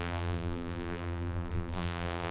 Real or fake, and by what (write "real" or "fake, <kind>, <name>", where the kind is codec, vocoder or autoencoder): fake, vocoder, BigVGAN v2